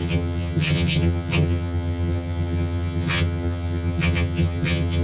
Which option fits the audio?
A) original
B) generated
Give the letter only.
B